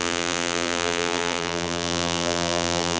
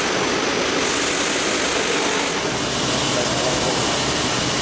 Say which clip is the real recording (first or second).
second